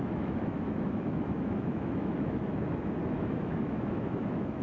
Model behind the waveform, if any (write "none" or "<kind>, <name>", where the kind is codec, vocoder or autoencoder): autoencoder, DAC-VAE